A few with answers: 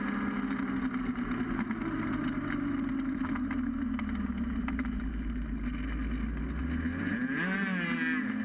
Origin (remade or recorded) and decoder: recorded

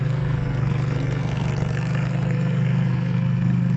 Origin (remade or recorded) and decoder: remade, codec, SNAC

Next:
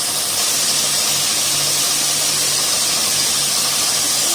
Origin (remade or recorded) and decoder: recorded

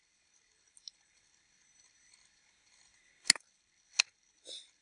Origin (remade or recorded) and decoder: recorded